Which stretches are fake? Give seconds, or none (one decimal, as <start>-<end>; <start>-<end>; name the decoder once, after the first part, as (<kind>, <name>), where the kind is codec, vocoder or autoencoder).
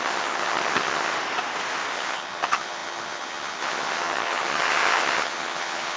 0.0-1.1 (vocoder, HiFi-GAN); 1.9-6.0